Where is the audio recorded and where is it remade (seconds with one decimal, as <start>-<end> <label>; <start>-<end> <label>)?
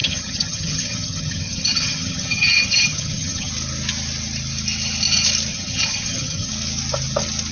0.0-3.5 remade; 3.5-5.5 recorded; 5.5-6.5 remade; 6.5-7.5 recorded